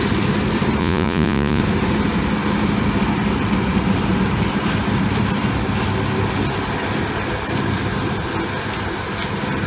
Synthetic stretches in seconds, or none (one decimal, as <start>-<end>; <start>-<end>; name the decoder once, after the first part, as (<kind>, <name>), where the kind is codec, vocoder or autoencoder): 0.8-1.6 (vocoder, Vocos)